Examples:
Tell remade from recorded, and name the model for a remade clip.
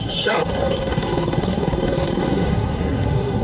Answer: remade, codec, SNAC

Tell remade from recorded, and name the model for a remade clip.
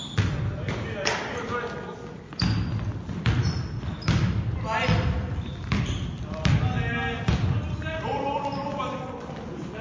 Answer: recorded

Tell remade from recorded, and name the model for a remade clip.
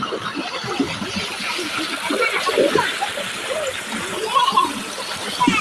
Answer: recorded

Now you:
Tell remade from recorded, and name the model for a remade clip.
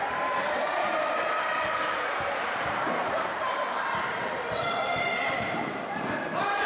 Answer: remade, vocoder, BigVGAN v2